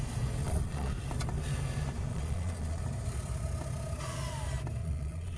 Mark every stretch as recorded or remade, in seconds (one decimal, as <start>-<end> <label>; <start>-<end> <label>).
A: 0.0-0.4 recorded; 0.4-0.9 remade; 0.9-2.1 recorded; 2.1-2.8 remade; 2.8-4.8 recorded; 4.8-5.4 remade